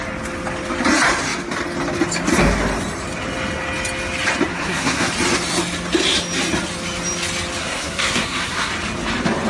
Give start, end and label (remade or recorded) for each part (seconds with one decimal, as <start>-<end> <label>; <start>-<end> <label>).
0.0-4.5 recorded; 4.5-5.1 remade; 5.1-7.6 recorded; 7.6-8.7 remade; 8.7-9.5 recorded